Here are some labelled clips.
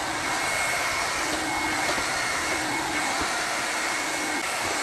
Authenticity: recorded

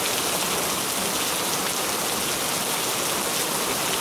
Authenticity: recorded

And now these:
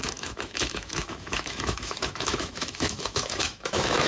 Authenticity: remade